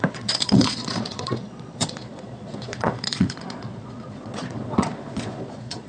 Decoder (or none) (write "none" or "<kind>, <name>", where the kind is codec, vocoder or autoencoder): vocoder, Vocos